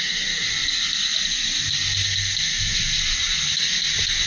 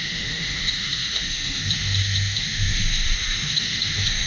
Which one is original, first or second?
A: first